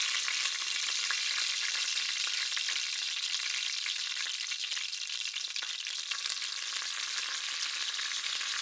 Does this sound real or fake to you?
real